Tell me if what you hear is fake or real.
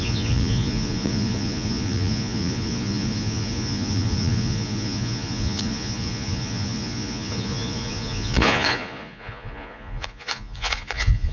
fake